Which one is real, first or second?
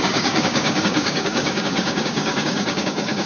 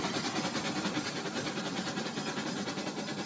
second